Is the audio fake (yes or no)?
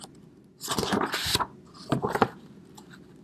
no